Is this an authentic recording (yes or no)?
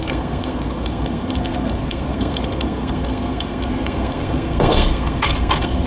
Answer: no